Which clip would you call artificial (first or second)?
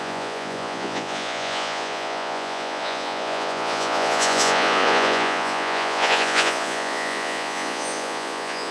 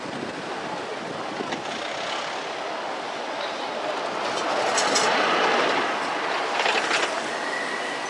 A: first